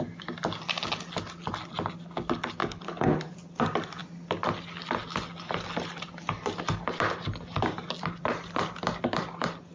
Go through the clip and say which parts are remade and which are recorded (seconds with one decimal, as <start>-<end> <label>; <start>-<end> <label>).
0.0-2.6 recorded; 2.6-3.2 remade; 3.2-9.7 recorded